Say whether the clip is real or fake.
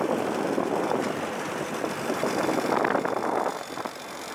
real